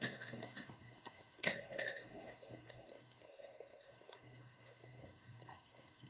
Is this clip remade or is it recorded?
remade